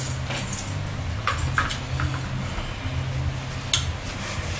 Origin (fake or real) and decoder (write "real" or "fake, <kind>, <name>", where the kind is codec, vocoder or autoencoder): real